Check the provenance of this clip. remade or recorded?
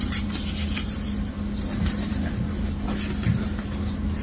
recorded